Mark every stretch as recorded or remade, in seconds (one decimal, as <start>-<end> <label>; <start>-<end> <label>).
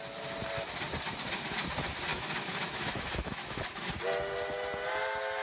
0.0-2.1 recorded; 2.1-3.9 remade; 3.9-5.4 recorded